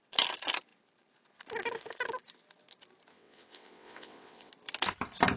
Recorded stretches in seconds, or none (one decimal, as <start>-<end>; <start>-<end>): 0.0-3.1; 4.5-5.4